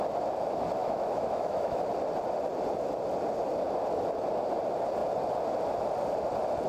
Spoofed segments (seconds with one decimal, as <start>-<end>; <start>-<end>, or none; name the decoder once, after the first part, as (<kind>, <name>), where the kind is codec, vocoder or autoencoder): 0.8-1.8 (autoencoder, DAC-VAE)